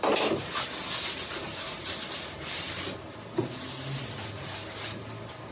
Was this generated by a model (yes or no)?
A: no